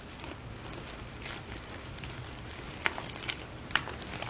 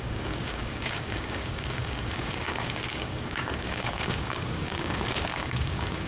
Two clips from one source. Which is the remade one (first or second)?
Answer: second